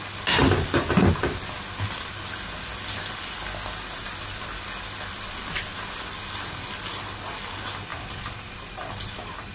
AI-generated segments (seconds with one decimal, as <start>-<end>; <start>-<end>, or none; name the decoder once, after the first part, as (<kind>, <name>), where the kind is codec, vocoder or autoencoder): none